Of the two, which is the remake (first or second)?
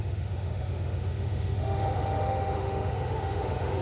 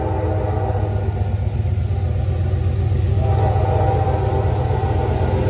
first